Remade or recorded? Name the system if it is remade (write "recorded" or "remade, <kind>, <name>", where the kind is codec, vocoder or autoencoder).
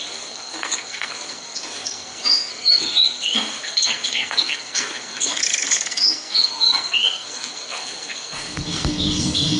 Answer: remade, codec, SNAC